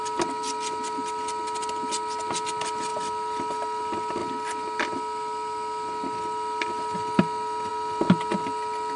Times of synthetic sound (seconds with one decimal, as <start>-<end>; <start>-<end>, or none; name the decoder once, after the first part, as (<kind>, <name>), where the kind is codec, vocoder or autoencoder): none